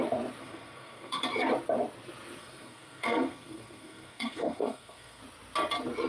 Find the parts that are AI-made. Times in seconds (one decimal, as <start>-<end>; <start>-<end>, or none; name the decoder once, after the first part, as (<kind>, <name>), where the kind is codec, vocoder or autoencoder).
0.4-1.2 (codec, SNAC); 2.4-5.2